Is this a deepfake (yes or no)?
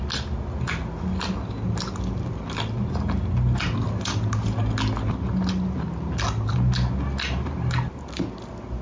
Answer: no